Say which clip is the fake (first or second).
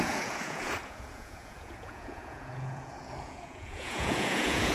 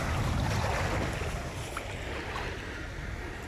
first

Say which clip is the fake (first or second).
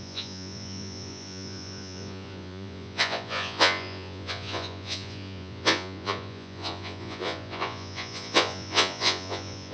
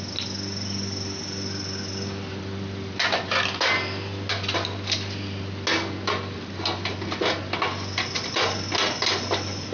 first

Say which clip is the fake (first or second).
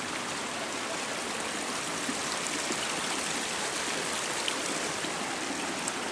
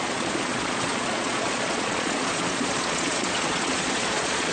second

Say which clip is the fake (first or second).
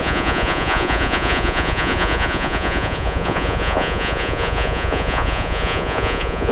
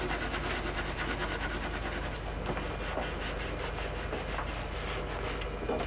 first